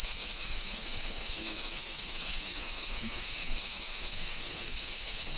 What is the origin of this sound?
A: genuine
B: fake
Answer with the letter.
B